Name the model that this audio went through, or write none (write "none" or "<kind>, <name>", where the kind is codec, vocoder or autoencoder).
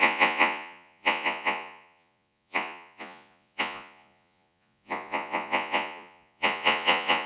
vocoder, Vocos